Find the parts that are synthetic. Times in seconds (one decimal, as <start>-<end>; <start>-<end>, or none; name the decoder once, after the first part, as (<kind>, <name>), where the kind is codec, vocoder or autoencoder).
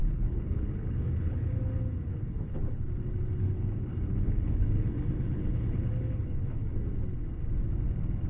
0.0-1.6 (codec, HILCodec); 2.1-2.9; 3.4-6.8